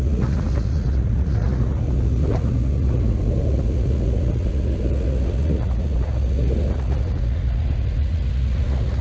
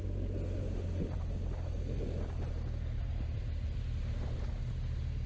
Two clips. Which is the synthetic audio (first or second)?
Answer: first